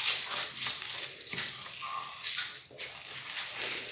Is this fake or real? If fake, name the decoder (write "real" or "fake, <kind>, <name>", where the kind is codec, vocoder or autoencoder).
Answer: real